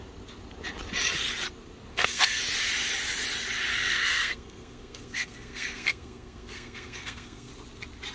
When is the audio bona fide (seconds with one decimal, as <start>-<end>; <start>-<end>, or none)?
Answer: 0.0-1.9; 2.4-3.7; 7.5-8.1